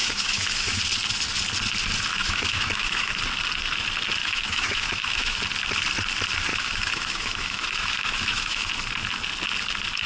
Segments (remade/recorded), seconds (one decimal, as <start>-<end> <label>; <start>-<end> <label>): 0.0-0.8 remade; 0.8-2.2 recorded; 2.2-3.1 remade; 3.1-4.2 recorded; 4.2-5.4 remade; 5.4-6.5 recorded; 6.5-8.7 remade; 8.7-10.1 recorded